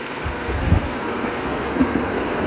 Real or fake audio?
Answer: fake